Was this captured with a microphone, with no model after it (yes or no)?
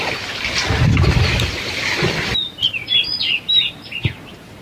yes